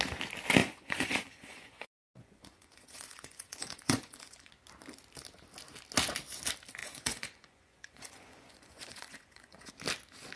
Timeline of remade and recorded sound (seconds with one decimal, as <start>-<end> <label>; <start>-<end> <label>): 0.0-0.6 recorded; 0.6-4.5 remade; 4.5-6.8 recorded; 6.8-9.7 remade; 9.7-10.4 recorded